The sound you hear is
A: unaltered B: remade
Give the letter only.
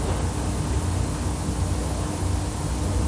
A